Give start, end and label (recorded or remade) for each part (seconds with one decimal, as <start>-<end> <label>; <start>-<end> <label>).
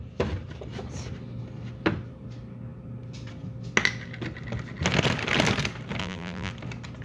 0.0-6.0 recorded; 6.0-6.5 remade; 6.5-7.0 recorded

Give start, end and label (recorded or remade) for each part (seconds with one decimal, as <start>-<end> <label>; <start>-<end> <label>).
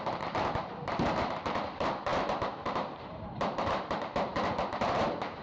0.0-5.4 remade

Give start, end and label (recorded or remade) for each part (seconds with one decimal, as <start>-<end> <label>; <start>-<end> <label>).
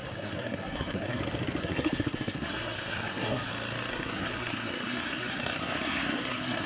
0.0-1.2 remade; 1.2-1.6 recorded; 1.6-3.5 remade; 3.5-3.9 recorded; 3.9-6.7 remade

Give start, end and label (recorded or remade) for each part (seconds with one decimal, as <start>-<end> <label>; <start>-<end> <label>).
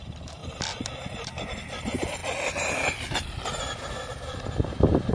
0.0-0.4 remade; 0.4-1.1 recorded; 1.1-2.2 remade; 2.2-5.1 recorded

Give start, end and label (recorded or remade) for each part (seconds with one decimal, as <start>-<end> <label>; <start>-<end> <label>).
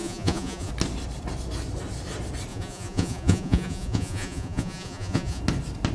0.0-0.7 remade; 0.7-2.5 recorded; 2.5-5.4 remade; 5.4-5.9 recorded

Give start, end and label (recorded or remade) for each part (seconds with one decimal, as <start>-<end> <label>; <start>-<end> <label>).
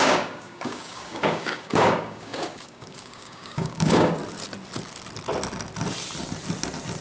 0.0-4.2 remade; 4.2-7.0 recorded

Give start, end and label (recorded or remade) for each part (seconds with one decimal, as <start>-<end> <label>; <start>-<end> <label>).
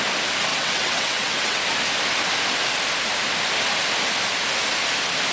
0.0-0.5 recorded; 0.5-1.6 remade; 1.6-5.3 recorded